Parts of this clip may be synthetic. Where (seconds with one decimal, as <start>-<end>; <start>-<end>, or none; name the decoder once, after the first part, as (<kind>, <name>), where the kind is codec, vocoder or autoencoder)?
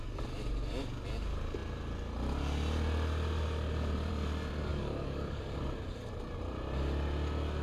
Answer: 4.7-5.4 (codec, DAC)